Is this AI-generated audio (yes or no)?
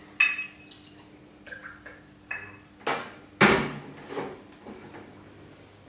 no